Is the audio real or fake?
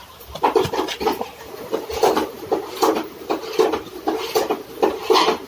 real